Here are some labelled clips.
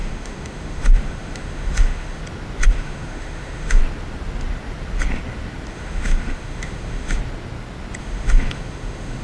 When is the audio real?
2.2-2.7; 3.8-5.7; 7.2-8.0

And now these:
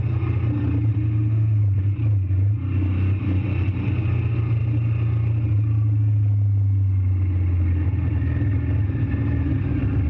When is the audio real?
0.0-0.9; 1.6-10.1